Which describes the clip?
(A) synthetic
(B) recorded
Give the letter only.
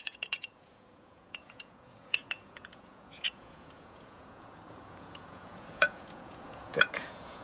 A